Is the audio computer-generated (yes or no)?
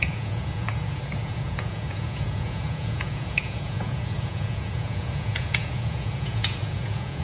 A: yes